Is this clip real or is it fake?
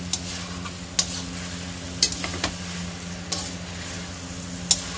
real